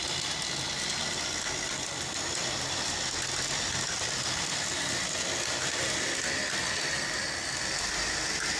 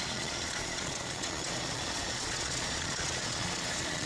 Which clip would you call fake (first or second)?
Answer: second